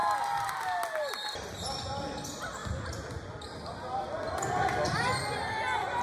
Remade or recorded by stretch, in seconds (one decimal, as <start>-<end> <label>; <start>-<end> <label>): 0.0-2.6 recorded; 2.6-4.0 remade; 4.0-6.0 recorded